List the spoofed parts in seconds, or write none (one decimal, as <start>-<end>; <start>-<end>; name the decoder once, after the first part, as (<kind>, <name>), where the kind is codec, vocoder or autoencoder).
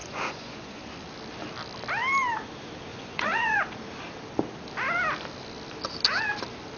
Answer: 0.0-0.8 (vocoder, Vocos); 2.9-3.6